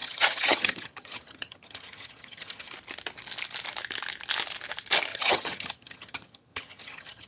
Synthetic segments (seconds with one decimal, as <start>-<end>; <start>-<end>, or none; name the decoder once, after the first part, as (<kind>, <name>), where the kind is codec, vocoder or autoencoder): 0.0-2.7 (vocoder, HiFi-GAN); 5.1-7.3